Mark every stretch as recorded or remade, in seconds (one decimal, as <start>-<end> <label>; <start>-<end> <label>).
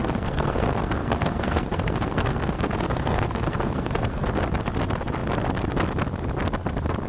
0.0-4.3 remade; 4.3-7.1 recorded